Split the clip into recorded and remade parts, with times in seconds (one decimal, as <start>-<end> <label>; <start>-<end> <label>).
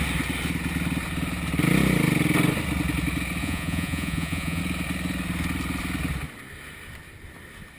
0.0-3.4 recorded; 3.4-4.6 remade; 4.6-7.8 recorded